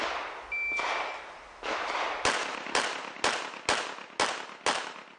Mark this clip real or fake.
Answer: real